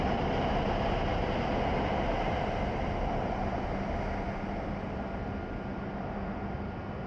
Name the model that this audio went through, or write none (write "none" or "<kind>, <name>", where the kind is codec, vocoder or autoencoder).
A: none